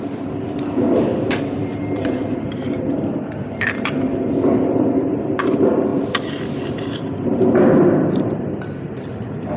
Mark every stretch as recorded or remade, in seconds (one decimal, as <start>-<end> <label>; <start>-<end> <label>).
0.0-9.6 recorded